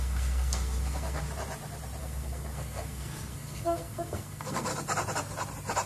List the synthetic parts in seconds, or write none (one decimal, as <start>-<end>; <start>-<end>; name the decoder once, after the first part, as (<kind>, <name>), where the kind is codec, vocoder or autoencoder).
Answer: 0.0-1.2 (codec, SNAC); 2.0-4.7